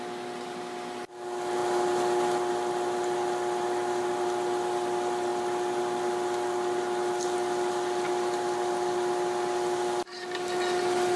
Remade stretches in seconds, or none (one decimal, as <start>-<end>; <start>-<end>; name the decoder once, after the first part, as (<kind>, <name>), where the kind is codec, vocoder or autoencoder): none